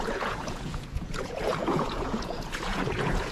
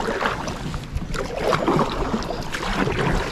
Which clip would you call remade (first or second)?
first